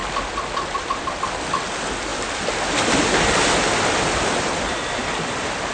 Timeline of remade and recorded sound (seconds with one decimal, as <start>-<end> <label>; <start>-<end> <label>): 0.0-5.7 recorded